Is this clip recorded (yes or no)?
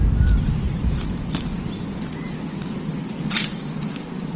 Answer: yes